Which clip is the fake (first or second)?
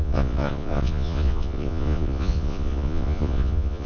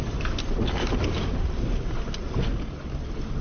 first